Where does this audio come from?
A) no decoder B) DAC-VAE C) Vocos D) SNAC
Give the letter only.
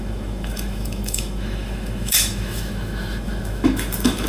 B